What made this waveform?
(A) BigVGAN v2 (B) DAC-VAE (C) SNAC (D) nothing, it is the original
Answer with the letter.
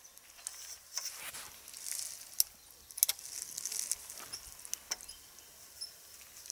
D